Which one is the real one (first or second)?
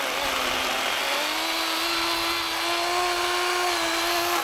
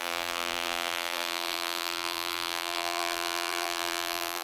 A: first